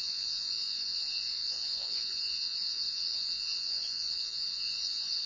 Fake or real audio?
fake